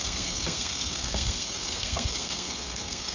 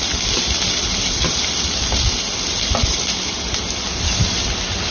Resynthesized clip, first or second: first